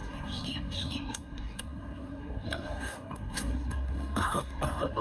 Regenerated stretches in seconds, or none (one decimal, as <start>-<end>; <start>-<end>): 0.0-5.0